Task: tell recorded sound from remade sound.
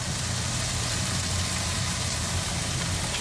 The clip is remade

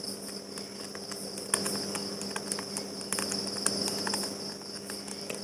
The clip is recorded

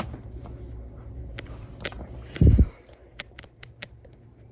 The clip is remade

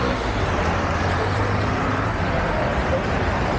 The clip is remade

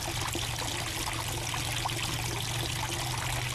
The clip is recorded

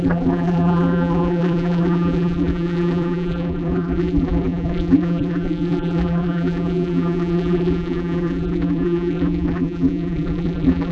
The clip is remade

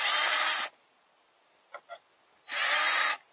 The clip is recorded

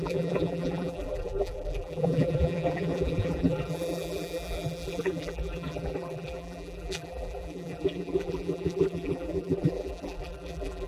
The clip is remade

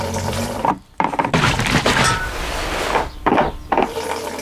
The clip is remade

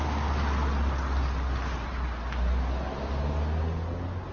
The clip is recorded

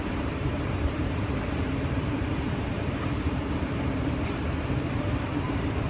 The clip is remade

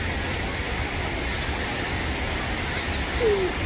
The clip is recorded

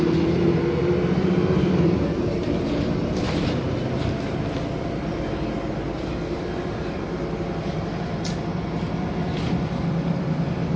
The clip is remade